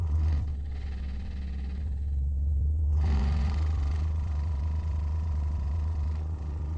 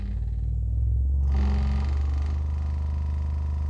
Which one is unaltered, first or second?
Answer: second